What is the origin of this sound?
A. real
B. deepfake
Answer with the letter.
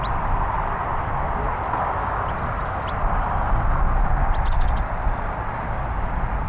B